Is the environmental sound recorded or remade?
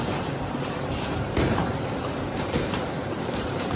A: remade